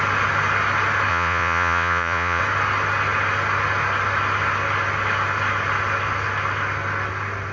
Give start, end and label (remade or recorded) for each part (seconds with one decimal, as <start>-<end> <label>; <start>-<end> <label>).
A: 0.0-1.1 recorded; 1.1-2.4 remade; 2.4-7.5 recorded